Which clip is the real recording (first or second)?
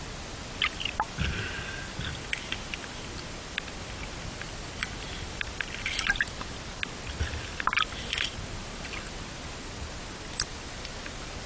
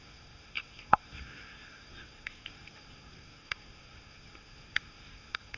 first